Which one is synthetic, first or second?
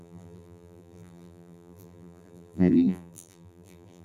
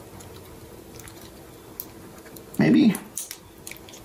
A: first